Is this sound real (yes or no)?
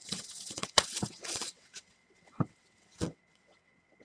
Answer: no